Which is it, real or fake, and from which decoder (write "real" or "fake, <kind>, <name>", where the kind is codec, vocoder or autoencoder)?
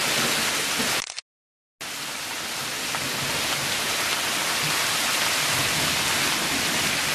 real